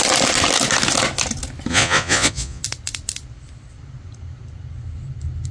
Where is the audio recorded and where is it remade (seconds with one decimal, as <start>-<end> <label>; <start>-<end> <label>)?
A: 0.0-1.7 recorded; 1.7-2.6 remade; 2.6-5.5 recorded